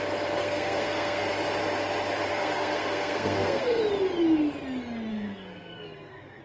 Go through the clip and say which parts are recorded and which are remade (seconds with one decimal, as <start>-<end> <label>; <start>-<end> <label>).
0.0-0.4 recorded; 0.4-1.3 remade; 1.3-2.3 recorded; 2.3-3.8 remade; 3.8-5.1 recorded; 5.1-6.4 remade